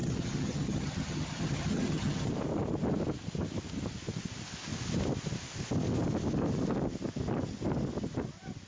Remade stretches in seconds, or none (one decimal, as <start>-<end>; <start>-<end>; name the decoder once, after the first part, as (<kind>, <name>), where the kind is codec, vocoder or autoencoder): 0.0-2.3 (vocoder, HiFi-GAN)